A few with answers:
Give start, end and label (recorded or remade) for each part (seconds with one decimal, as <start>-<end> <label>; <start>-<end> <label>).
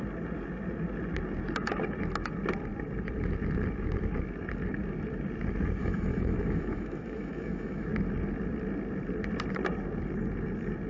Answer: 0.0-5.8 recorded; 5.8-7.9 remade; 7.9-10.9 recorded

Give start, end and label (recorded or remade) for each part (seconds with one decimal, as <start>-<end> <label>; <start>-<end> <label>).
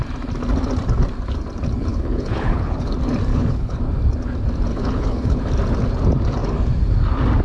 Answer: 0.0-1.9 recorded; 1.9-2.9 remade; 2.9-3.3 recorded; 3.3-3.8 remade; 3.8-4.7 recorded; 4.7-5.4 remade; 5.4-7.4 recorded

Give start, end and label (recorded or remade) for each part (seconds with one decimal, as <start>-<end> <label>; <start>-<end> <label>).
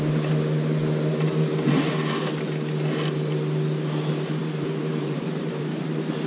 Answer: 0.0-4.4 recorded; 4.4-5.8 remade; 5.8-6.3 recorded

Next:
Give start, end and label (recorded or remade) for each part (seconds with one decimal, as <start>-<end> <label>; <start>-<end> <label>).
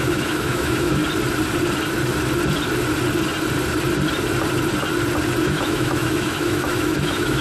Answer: 0.0-1.0 remade; 1.0-5.4 recorded; 5.4-7.4 remade